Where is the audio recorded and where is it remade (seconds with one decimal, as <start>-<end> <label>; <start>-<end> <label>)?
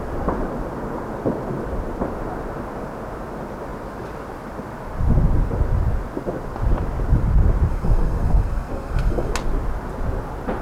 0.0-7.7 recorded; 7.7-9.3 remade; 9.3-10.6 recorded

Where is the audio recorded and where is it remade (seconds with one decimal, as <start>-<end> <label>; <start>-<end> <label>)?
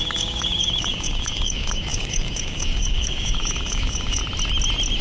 0.0-4.2 remade; 4.2-5.0 recorded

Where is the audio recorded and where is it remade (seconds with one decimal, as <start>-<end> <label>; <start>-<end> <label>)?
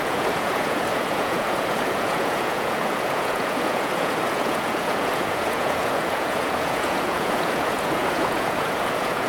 0.0-9.3 remade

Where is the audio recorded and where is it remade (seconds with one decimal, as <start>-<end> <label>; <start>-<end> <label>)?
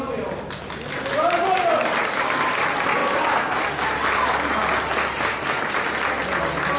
0.0-6.8 recorded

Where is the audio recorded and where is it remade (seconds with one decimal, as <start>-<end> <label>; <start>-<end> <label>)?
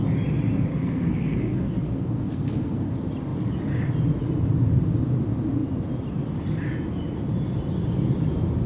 0.0-0.7 recorded; 0.7-2.9 remade; 2.9-8.7 recorded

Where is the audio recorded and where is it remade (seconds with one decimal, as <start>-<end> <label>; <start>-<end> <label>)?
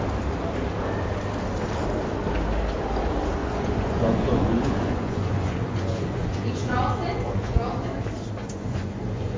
0.0-3.4 recorded; 3.4-8.0 remade; 8.0-8.4 recorded; 8.4-9.4 remade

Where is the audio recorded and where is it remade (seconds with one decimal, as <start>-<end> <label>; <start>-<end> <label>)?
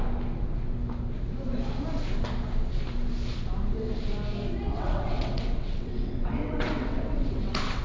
0.0-4.7 recorded; 4.7-7.8 remade